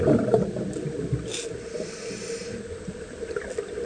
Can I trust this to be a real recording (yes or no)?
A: yes